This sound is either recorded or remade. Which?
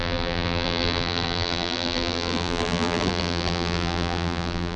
remade